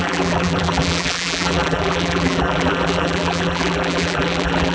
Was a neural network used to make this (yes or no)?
yes